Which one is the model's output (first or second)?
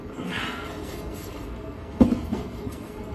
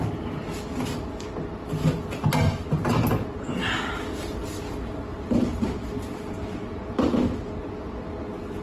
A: first